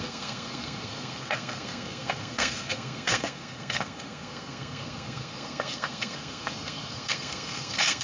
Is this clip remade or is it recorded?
remade